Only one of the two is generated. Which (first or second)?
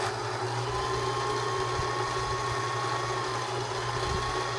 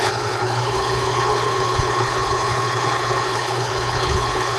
second